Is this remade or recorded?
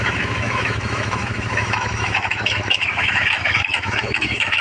remade